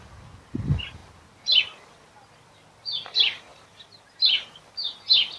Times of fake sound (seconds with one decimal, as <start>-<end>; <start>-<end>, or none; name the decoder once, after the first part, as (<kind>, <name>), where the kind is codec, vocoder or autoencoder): none

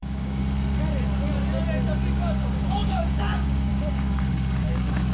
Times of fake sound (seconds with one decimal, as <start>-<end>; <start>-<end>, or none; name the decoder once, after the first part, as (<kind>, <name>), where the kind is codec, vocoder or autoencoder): 0.0-0.4 (codec, DAC); 2.1-5.1

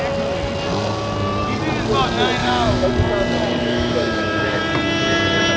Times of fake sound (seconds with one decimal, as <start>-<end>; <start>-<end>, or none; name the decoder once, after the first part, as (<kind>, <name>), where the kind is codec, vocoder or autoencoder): 2.4-2.9 (autoencoder, DAC-VAE); 3.6-4.6

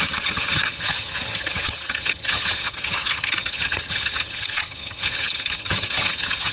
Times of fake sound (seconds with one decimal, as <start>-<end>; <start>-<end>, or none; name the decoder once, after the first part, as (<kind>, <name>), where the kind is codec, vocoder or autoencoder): 0.0-6.5 (vocoder, HiFi-GAN)

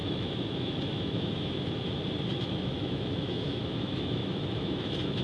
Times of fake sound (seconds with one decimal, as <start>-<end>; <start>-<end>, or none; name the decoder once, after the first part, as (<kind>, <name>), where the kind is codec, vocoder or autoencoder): 0.0-1.9 (autoencoder, DAC-VAE); 2.3-5.2

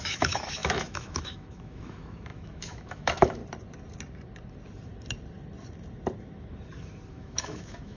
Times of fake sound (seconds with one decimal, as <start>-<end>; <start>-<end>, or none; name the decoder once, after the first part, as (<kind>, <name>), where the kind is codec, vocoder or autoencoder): 0.0-3.4 (autoencoder, DAC-VAE); 7.1-8.0